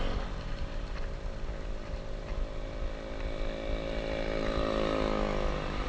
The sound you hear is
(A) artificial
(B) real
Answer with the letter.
B